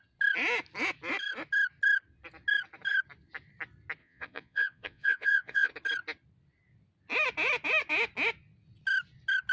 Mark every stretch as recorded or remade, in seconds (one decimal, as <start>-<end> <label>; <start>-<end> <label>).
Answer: 0.0-4.0 recorded; 4.0-5.7 remade; 5.7-9.5 recorded